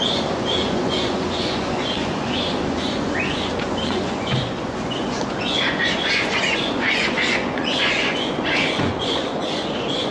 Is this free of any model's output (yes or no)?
no